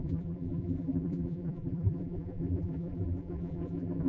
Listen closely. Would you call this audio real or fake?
fake